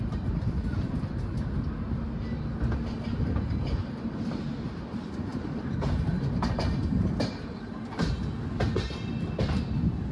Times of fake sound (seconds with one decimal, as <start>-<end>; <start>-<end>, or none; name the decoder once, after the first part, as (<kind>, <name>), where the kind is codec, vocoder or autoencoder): 5.3-8.1 (vocoder, BigVGAN v2)